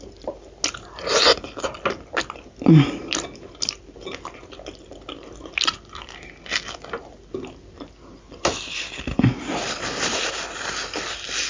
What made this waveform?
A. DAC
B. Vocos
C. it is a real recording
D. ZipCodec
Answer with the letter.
C